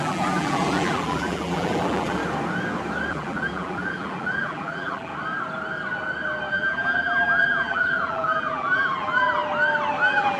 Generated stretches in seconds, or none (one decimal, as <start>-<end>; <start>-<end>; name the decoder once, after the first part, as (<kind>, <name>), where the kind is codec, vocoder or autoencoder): 0.0-2.2 (vocoder, BigVGAN v2); 3.1-5.1; 6.5-9.4; 10.0-10.4